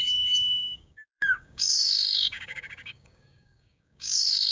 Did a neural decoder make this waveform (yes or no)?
yes